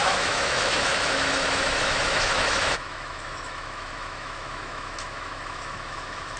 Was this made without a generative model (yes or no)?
no